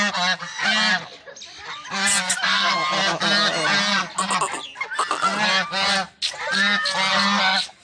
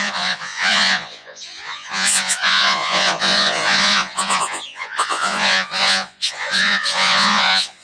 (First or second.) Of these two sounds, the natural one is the first